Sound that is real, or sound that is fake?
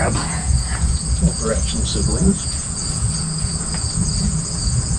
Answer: fake